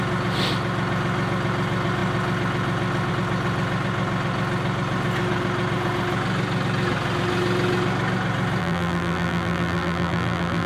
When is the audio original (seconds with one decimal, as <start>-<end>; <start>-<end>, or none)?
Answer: 0.0-8.6